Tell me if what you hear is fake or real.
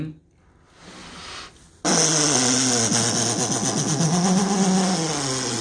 real